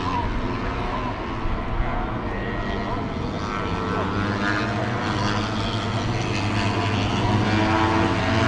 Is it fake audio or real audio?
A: real